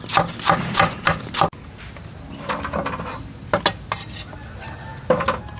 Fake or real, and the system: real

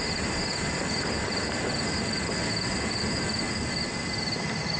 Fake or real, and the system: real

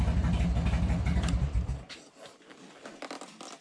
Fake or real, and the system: real